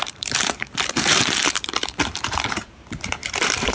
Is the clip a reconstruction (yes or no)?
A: yes